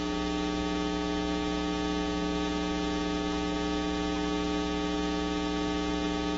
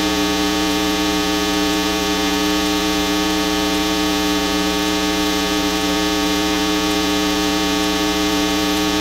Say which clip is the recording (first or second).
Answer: first